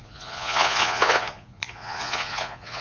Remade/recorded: remade